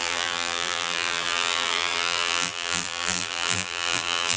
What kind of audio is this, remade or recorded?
remade